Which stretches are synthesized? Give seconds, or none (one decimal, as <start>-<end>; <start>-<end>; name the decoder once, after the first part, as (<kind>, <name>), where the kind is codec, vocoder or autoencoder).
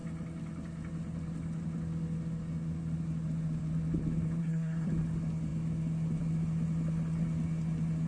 4.4-4.9 (codec, SNAC)